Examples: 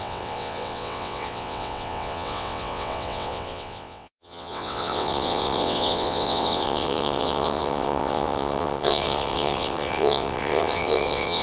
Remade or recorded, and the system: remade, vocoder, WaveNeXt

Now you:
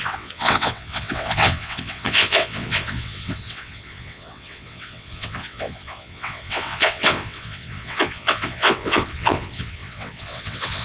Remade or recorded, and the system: remade, vocoder, WaveNeXt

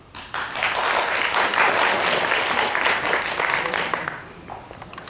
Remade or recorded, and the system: recorded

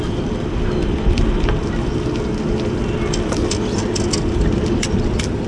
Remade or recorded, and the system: recorded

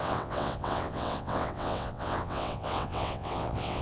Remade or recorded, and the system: remade, vocoder, WaveNeXt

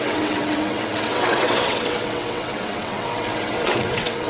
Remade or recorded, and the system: remade, vocoder, WaveNeXt